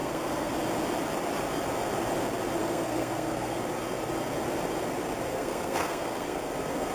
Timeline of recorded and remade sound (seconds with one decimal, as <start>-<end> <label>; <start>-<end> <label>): 0.0-0.5 remade; 0.5-2.6 recorded; 2.6-3.6 remade; 3.6-5.3 recorded; 5.3-6.4 remade; 6.4-6.9 recorded